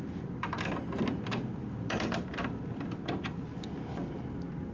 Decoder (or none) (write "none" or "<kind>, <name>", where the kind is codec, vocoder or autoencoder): none